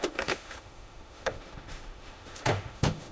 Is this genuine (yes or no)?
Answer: no